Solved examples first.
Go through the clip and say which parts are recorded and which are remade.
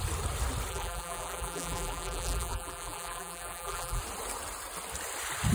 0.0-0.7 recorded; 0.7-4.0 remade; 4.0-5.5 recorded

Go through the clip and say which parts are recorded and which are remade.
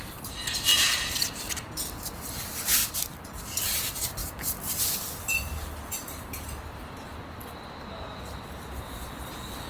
0.0-0.7 recorded; 0.7-1.7 remade; 1.7-2.8 recorded; 2.8-3.6 remade; 3.6-9.7 recorded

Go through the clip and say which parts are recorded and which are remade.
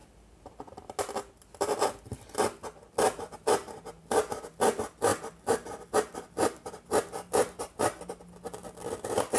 0.0-2.1 remade; 2.1-2.9 recorded; 2.9-9.4 remade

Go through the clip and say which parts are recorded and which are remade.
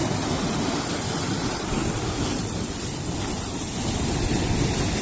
0.0-3.0 remade; 3.0-5.0 recorded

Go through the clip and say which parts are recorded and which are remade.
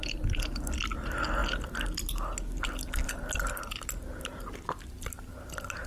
0.0-5.9 recorded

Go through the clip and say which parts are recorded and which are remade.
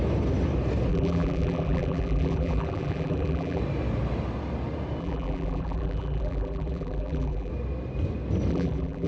0.0-0.9 recorded; 0.9-3.6 remade; 3.6-5.0 recorded; 5.0-7.5 remade; 7.5-8.5 recorded; 8.5-9.1 remade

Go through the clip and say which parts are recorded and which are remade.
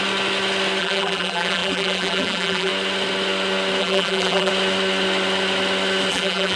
0.0-0.8 recorded; 0.8-2.7 remade; 2.7-3.8 recorded; 3.8-4.5 remade; 4.5-6.1 recorded; 6.1-6.6 remade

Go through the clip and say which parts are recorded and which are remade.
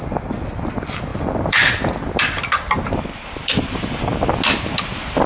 0.0-1.1 recorded; 1.1-1.9 remade; 1.9-5.3 recorded